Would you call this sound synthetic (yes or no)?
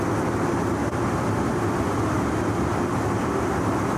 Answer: no